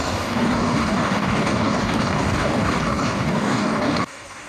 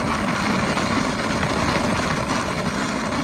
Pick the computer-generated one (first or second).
first